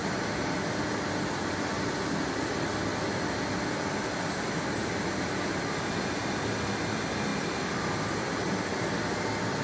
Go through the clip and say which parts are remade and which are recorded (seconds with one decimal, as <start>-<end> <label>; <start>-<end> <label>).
0.0-9.6 recorded